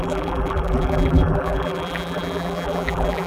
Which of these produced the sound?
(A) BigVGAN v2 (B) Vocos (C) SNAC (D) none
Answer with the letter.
A